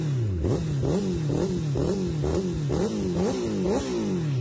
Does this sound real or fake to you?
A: real